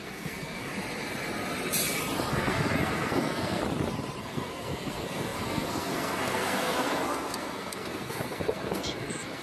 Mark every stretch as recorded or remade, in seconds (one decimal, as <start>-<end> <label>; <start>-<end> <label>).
0.0-0.7 remade; 0.7-2.3 recorded; 2.3-3.6 remade; 3.6-4.2 recorded; 4.2-9.4 remade